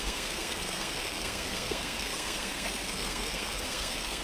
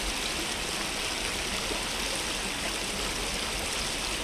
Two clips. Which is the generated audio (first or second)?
first